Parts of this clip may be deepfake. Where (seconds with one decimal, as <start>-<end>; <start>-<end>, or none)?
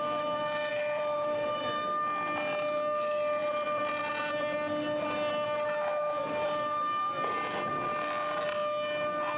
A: 0.7-1.6